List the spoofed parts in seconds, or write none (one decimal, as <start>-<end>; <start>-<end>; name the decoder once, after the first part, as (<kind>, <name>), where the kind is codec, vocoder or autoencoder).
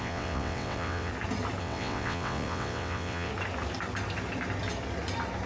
0.0-1.1 (vocoder, WaveNeXt); 1.6-3.3